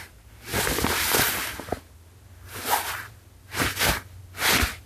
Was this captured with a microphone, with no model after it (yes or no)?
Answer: yes